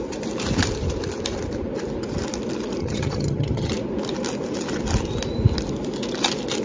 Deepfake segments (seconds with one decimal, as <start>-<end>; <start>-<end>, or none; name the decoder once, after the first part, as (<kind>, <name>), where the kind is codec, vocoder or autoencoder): 2.8-3.7 (vocoder, HiFi-GAN)